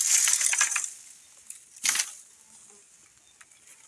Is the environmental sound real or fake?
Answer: real